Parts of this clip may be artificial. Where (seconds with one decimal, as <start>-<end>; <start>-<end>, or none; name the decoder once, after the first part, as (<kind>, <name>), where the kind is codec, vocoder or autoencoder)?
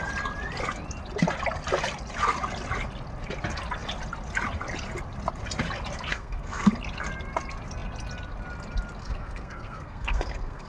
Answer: 6.1-6.7 (codec, SNAC); 9.0-10.7